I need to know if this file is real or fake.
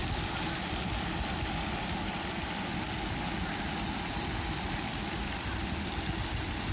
real